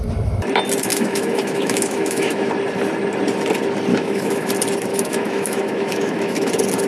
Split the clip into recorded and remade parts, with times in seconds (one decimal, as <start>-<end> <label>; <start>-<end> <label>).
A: 0.0-0.9 recorded; 0.9-2.5 remade; 2.5-3.9 recorded; 3.9-4.5 remade; 4.5-4.9 recorded; 4.9-6.5 remade; 6.5-6.9 recorded